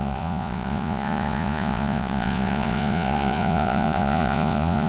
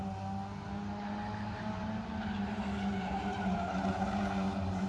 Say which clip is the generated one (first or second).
first